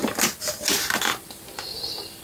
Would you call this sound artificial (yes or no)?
no